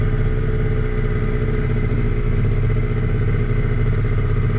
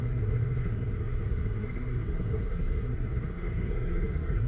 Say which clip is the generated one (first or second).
second